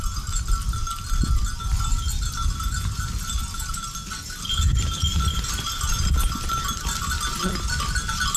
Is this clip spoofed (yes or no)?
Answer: no